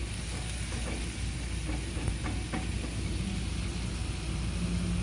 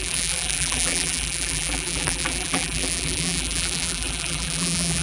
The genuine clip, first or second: first